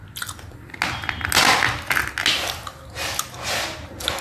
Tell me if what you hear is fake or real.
real